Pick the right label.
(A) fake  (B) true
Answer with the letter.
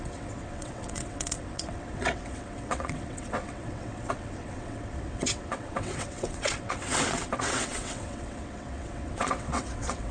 A